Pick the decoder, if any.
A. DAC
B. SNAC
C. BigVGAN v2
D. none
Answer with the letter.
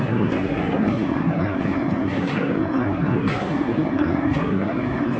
B